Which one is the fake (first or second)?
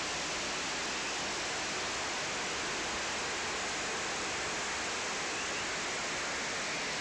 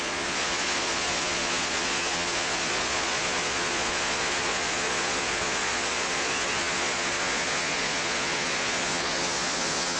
second